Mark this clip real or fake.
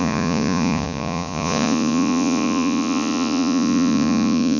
fake